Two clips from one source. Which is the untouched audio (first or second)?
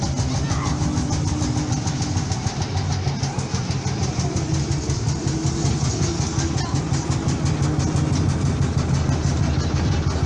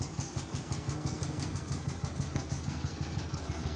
first